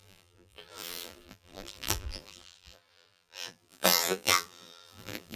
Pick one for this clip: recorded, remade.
remade